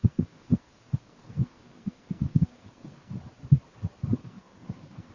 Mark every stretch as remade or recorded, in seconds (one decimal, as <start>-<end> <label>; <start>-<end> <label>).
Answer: 0.0-3.1 remade; 3.1-4.2 recorded; 4.2-5.1 remade